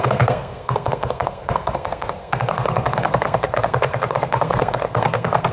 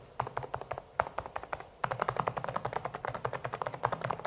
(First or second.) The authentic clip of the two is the second